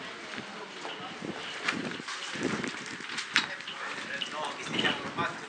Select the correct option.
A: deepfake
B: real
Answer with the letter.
B